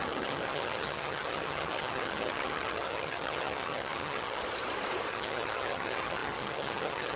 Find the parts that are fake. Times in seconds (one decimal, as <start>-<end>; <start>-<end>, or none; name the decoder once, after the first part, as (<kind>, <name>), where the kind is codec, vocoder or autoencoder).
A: 0.0-4.4 (vocoder, HiFi-GAN); 5.1-7.2